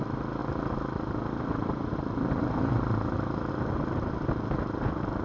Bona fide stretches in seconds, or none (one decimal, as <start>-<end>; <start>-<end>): 0.0-5.2